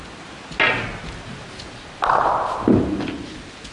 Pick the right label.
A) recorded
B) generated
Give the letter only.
A